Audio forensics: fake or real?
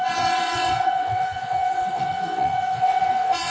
fake